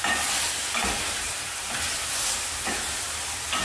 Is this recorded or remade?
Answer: recorded